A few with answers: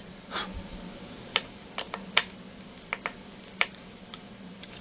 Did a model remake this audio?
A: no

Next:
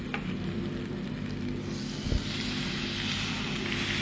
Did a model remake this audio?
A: no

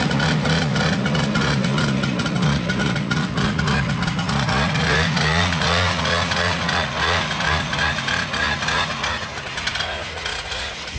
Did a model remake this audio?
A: yes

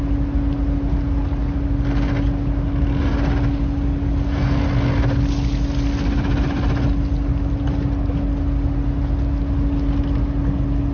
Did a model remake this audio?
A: no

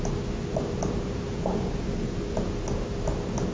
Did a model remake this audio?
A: no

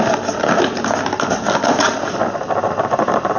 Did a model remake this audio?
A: no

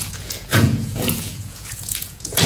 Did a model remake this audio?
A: yes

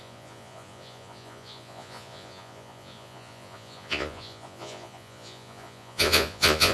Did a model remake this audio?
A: yes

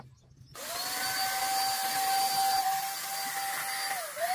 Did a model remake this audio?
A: no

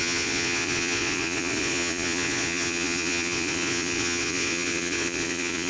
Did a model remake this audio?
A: yes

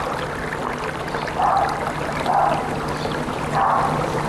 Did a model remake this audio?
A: no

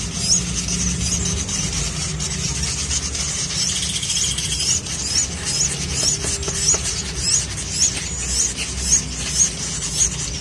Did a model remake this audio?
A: no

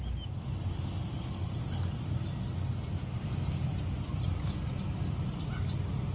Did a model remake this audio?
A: no